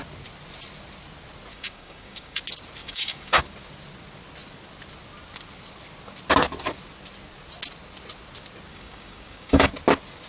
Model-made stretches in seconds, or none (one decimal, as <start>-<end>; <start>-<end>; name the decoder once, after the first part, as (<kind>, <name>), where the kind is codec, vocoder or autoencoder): 1.5-2.4 (codec, DAC); 2.8-3.4; 8.7-9.7